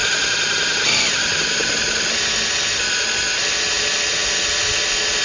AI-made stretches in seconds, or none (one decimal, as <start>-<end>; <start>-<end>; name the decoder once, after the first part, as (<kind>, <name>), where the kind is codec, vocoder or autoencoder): none